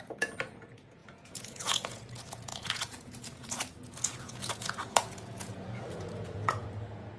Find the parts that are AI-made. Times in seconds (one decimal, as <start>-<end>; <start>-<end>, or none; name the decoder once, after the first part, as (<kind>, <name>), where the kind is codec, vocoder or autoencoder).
0.0-7.2 (vocoder, Vocos)